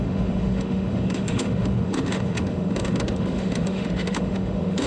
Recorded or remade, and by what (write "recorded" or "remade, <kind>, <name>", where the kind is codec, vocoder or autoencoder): remade, autoencoder, DAC-VAE